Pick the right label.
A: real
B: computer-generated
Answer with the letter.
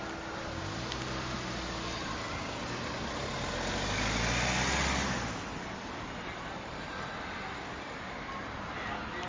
A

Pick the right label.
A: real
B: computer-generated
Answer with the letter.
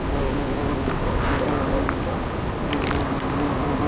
A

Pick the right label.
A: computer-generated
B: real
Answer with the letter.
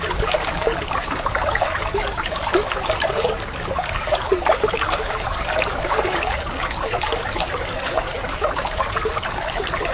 A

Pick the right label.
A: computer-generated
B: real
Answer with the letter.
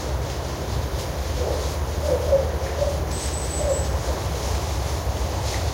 B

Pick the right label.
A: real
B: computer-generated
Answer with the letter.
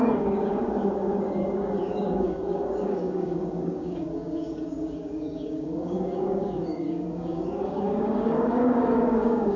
B